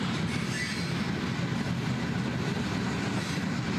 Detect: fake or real real